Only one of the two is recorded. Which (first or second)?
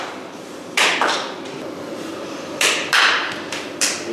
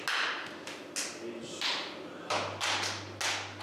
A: second